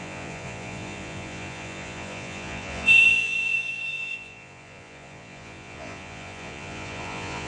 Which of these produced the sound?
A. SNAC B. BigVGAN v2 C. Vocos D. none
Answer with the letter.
C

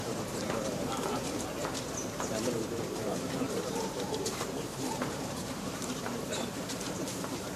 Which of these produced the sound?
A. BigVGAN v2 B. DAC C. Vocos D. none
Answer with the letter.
A